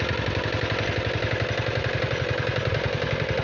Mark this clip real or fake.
real